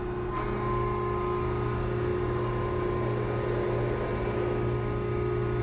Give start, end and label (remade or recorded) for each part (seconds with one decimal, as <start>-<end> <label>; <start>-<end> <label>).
0.0-5.6 recorded